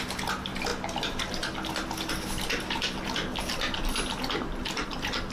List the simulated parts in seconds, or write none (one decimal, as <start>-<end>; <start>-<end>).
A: none